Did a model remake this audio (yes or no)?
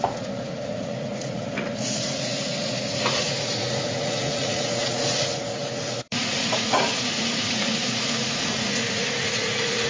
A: yes